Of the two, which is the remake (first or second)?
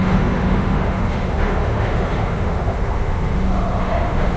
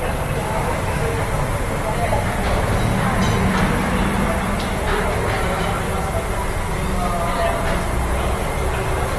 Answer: first